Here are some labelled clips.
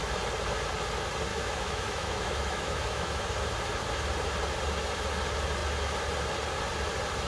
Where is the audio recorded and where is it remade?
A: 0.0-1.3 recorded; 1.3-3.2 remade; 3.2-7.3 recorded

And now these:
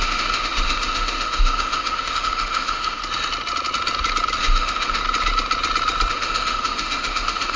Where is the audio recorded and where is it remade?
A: 0.0-3.0 remade; 3.0-4.4 recorded; 4.4-5.0 remade; 5.0-6.1 recorded; 6.1-7.6 remade

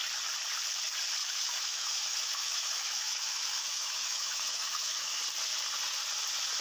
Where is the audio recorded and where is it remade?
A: 0.0-1.2 recorded; 1.2-5.2 remade; 5.2-6.6 recorded

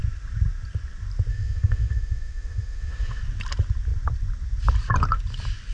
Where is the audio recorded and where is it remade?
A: 0.0-1.3 recorded; 1.3-3.2 remade; 3.2-5.7 recorded

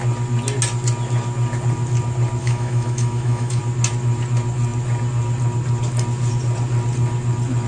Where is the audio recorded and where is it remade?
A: 0.0-2.4 recorded; 2.4-3.6 remade; 3.6-7.7 recorded

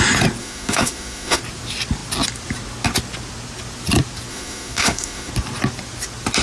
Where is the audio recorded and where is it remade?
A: 0.0-0.4 recorded; 0.4-1.4 remade; 1.4-4.3 recorded; 4.3-5.3 remade; 5.3-6.4 recorded

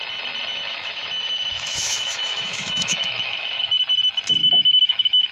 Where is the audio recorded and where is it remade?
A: 0.0-0.5 recorded; 0.5-3.7 remade; 3.7-4.4 recorded; 4.4-5.3 remade